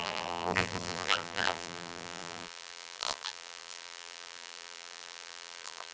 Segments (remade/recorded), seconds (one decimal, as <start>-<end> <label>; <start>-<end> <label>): 0.0-5.9 remade